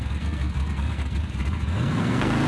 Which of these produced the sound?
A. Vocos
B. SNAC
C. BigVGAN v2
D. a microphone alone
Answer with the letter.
B